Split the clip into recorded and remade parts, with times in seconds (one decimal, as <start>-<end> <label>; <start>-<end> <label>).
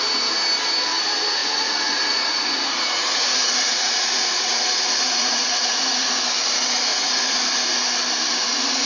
0.0-1.4 recorded; 1.4-6.1 remade; 6.1-6.9 recorded; 6.9-7.4 remade; 7.4-8.9 recorded